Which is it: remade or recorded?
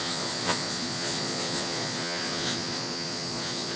remade